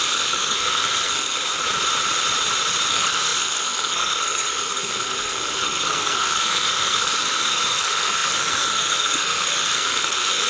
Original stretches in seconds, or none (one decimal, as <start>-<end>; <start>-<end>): 1.4-2.9